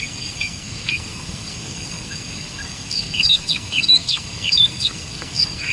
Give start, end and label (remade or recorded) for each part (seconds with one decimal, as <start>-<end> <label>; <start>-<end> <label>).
0.0-5.7 remade